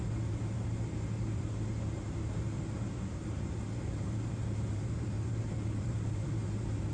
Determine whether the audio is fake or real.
fake